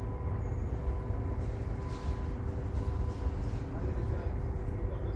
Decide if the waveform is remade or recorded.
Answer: recorded